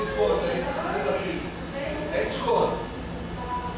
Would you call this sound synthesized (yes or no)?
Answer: no